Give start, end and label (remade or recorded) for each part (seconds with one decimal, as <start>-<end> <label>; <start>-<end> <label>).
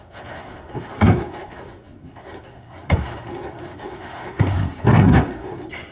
0.0-5.9 remade